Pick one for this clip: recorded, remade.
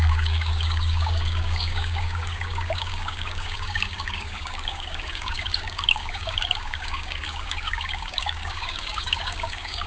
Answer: remade